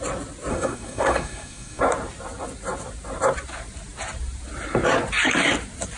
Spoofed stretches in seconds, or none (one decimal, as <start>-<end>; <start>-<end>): 0.5-1.8